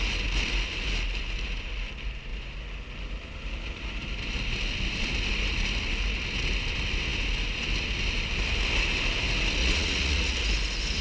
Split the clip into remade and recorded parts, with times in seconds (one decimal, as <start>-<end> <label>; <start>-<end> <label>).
0.0-9.6 recorded; 9.6-10.4 remade; 10.4-11.0 recorded